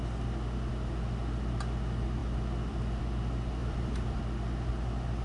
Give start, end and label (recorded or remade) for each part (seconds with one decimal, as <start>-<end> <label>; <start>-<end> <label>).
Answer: 0.0-3.6 recorded; 3.6-4.2 remade; 4.2-5.2 recorded